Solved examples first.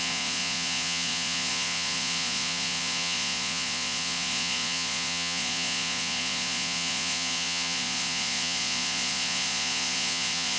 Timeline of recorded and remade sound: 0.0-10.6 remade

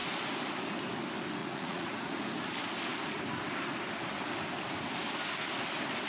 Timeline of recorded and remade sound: 0.0-1.4 recorded; 1.4-2.1 remade; 2.1-6.1 recorded

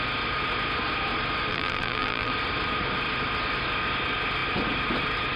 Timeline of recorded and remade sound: 0.0-1.5 recorded; 1.5-2.3 remade; 2.3-5.4 recorded

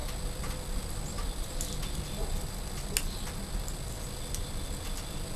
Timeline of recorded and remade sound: 0.0-5.4 recorded

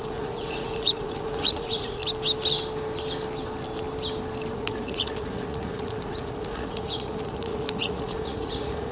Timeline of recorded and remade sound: 0.0-2.0 remade; 2.0-4.5 recorded; 4.5-8.9 remade

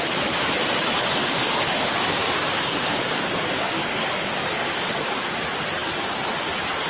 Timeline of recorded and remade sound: 0.0-1.2 recorded; 1.2-5.3 remade; 5.3-6.9 recorded